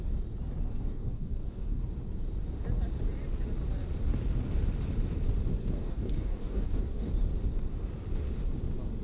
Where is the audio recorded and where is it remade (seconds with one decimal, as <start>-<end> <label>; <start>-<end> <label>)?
0.0-0.7 recorded; 0.7-1.8 remade; 1.8-5.6 recorded; 5.6-7.1 remade; 7.1-9.0 recorded